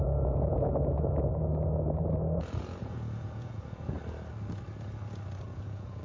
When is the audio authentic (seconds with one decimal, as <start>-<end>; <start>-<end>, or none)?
1.3-2.4; 4.0-5.4